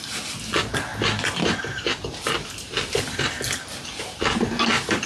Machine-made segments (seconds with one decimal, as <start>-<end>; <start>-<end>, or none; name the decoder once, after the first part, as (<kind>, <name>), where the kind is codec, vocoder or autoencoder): none